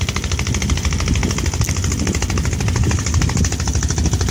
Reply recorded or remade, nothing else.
recorded